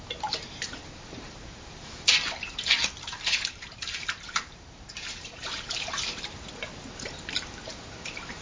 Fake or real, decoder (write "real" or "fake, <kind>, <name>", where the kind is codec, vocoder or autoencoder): fake, vocoder, BigVGAN v2